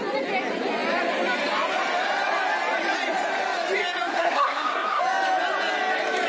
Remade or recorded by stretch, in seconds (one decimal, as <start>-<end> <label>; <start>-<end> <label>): 0.0-4.1 recorded; 4.1-5.0 remade; 5.0-6.3 recorded